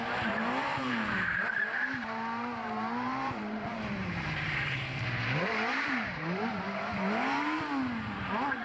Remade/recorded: remade